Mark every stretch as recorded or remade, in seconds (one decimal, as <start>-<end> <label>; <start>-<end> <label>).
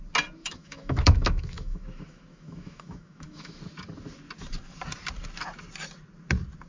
0.0-0.4 recorded; 0.4-3.6 remade; 3.6-6.7 recorded